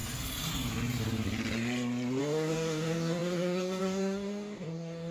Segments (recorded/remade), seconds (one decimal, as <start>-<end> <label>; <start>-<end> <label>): 0.0-2.2 recorded; 2.2-5.1 remade